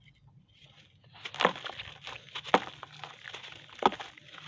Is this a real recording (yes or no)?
yes